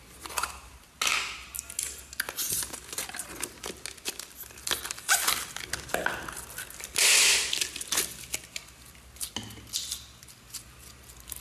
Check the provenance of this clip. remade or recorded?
recorded